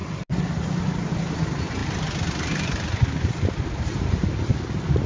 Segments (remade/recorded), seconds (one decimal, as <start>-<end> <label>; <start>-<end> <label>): 0.0-1.8 recorded; 1.8-5.1 remade